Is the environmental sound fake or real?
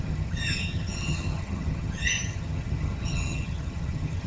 fake